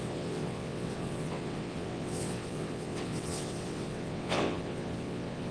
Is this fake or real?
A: fake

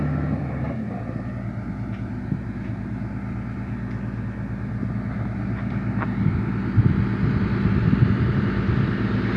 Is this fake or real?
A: real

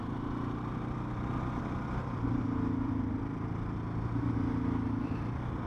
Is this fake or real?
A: fake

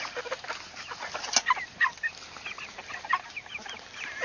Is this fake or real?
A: real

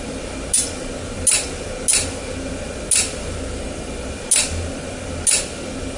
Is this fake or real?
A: real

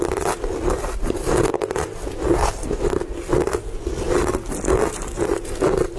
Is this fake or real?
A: real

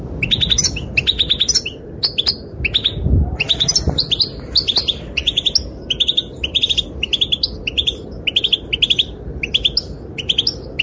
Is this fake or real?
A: real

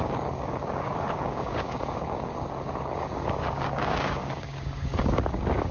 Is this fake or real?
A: fake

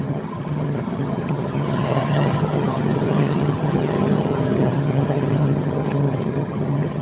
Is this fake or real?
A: fake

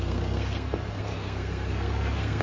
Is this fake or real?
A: fake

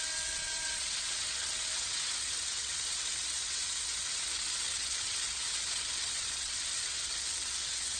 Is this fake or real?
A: fake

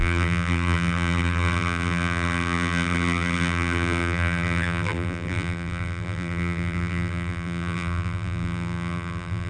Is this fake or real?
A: fake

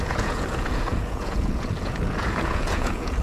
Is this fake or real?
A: fake